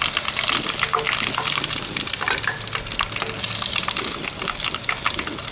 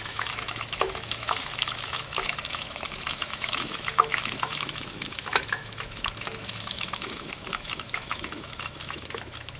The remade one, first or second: second